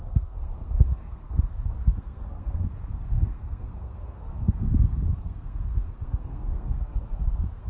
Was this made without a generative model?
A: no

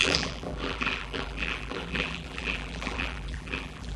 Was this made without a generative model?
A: no